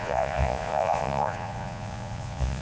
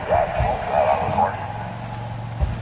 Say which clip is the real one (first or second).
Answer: second